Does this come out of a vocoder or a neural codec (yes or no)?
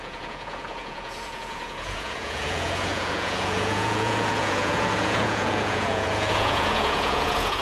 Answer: yes